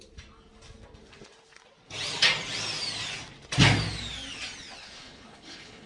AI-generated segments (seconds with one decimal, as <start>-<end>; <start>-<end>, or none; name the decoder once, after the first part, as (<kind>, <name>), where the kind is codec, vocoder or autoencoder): 4.8-5.9 (codec, HILCodec)